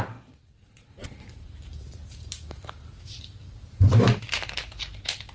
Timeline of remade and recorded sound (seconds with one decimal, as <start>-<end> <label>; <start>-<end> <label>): 0.0-5.3 remade